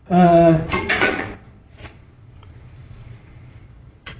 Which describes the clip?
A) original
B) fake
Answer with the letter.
B